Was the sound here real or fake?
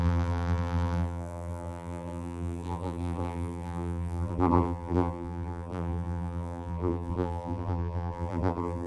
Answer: fake